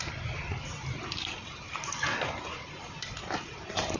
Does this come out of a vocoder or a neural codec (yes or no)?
no